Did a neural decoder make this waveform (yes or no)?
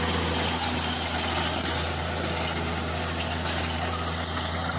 no